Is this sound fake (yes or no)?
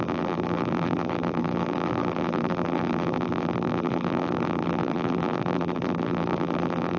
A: yes